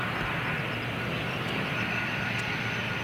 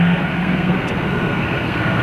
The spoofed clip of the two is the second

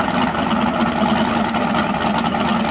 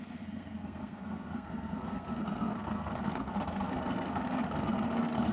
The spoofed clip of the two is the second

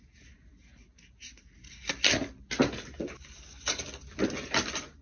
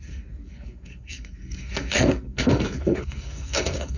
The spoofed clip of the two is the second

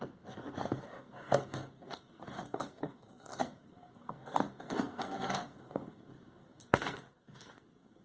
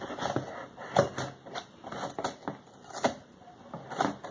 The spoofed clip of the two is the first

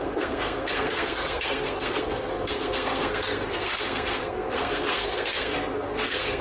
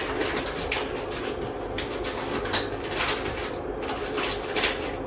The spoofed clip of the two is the first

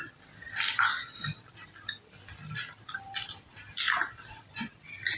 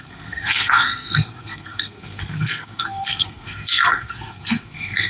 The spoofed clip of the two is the second